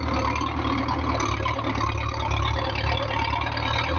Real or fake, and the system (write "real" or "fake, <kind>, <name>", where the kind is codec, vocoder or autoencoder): real